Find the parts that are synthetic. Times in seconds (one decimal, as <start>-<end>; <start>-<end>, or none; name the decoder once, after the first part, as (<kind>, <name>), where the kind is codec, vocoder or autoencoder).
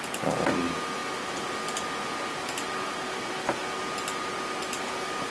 none